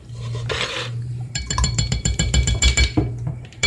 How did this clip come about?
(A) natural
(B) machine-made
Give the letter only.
B